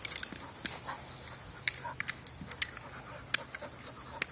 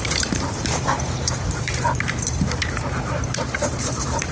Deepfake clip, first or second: second